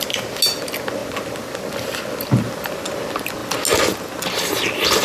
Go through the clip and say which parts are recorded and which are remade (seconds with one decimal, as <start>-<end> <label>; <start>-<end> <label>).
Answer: 0.0-5.0 recorded